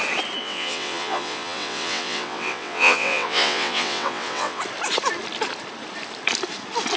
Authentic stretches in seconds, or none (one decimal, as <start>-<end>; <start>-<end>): 0.0-0.4; 4.6-7.0